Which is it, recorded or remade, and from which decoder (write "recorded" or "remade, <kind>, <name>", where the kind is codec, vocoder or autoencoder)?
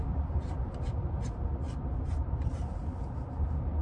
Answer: recorded